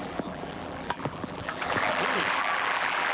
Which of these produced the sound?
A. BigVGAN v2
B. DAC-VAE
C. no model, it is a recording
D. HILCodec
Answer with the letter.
A